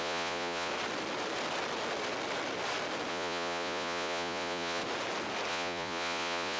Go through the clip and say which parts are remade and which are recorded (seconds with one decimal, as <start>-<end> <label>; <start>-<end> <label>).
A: 0.0-0.7 remade; 0.7-3.1 recorded; 3.1-4.8 remade; 4.8-5.5 recorded; 5.5-6.6 remade